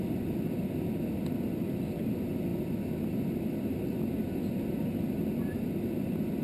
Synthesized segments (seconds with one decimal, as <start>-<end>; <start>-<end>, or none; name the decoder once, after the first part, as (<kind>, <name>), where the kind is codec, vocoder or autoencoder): none